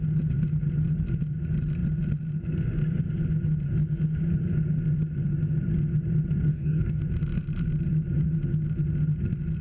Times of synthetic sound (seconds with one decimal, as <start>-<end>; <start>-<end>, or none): 6.5-7.0

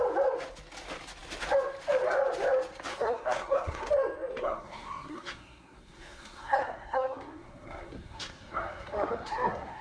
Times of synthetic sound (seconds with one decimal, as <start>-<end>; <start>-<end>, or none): 2.9-3.9; 4.4-9.8

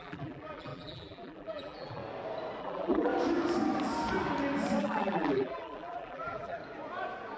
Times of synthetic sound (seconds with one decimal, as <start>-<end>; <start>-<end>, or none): 0.0-2.0; 2.6-3.1; 4.8-6.6